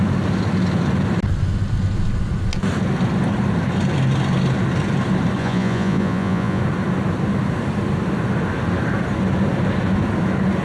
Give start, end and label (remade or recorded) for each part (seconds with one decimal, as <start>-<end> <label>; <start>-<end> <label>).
0.0-5.4 recorded; 5.4-6.6 remade; 6.6-10.6 recorded